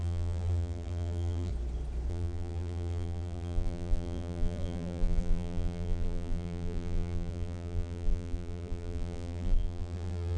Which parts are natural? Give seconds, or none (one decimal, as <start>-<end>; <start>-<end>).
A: 1.5-2.1